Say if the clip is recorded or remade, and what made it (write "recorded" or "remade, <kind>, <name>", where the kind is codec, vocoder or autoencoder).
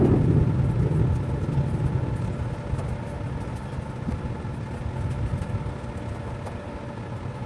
recorded